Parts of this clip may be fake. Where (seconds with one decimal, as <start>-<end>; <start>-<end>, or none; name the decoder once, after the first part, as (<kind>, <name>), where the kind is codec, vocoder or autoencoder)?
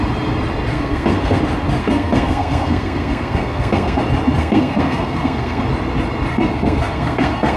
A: 0.7-1.4 (codec, SNAC); 1.8-4.0; 4.4-5.6; 6.3-7.6